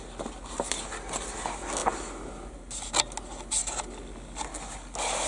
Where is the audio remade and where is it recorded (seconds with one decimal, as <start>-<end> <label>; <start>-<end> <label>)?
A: 0.0-5.3 recorded